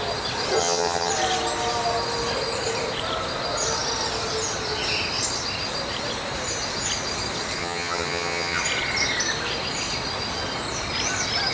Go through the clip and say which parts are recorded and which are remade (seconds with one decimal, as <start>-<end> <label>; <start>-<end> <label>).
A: 0.0-0.6 recorded; 0.6-1.1 remade; 1.1-7.6 recorded; 7.6-8.6 remade; 8.6-11.5 recorded